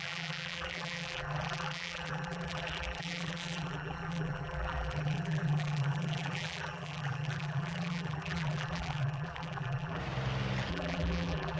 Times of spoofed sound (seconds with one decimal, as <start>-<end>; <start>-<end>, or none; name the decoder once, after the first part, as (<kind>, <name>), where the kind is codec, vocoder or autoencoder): 0.0-10.0 (vocoder, BigVGAN v2); 10.7-11.6